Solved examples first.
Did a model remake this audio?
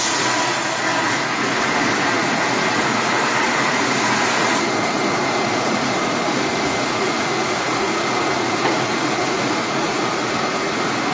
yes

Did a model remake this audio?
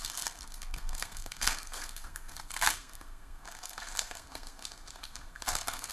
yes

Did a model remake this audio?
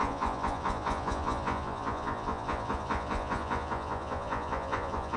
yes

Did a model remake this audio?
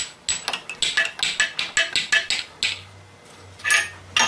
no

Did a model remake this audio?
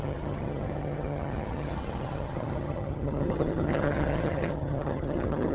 yes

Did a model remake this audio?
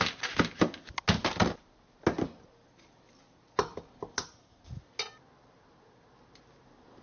no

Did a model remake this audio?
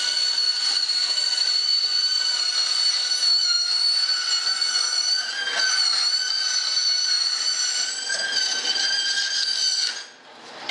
no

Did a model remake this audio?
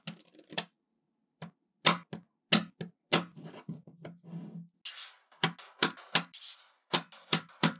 no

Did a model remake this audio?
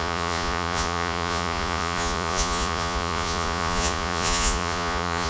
yes